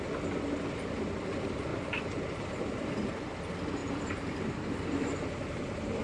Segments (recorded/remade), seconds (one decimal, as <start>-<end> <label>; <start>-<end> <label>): 0.0-1.7 recorded; 1.7-3.1 remade; 3.1-3.8 recorded; 3.8-6.0 remade